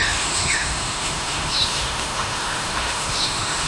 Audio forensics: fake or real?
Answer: fake